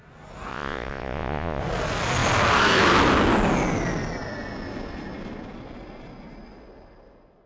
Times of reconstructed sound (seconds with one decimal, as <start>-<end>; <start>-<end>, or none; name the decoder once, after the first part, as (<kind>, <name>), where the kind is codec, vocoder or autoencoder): 0.5-1.6 (vocoder, Vocos)